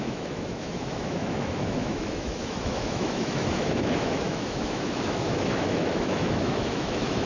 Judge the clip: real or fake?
fake